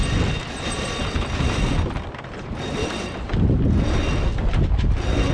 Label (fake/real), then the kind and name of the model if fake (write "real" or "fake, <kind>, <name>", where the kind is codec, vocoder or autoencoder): real